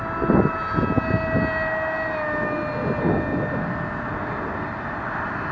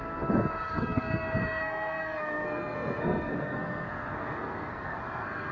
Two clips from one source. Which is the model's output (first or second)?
second